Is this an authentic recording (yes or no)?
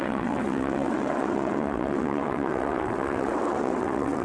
no